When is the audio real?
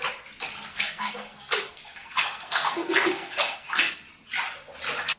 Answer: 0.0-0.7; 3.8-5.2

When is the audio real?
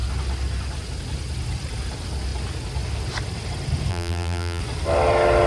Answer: 0.0-3.9; 4.6-5.5